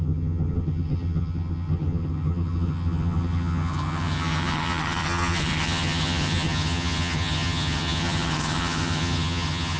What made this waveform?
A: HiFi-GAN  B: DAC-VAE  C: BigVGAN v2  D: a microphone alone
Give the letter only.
A